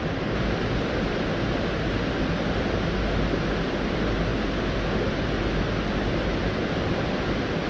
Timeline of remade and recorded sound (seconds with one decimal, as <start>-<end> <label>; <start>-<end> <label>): 0.0-7.7 recorded